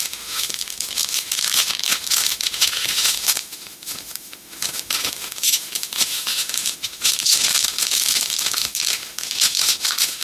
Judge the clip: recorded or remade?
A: remade